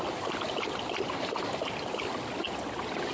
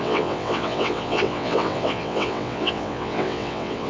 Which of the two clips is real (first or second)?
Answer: first